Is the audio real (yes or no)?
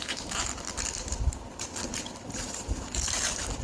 no